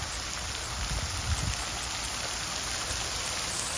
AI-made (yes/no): no